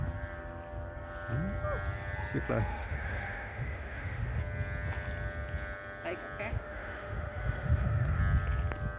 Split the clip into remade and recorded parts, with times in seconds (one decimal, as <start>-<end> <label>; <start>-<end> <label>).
0.0-2.7 recorded; 2.7-4.4 remade; 4.4-6.5 recorded; 6.5-8.2 remade; 8.2-9.0 recorded